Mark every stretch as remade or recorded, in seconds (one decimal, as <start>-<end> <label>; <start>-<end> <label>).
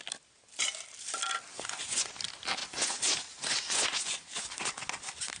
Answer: 0.0-1.5 recorded; 1.5-2.1 remade; 2.1-2.6 recorded; 2.6-4.5 remade; 4.5-5.4 recorded